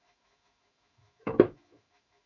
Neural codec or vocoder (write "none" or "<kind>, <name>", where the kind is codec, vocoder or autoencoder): autoencoder, DAC-VAE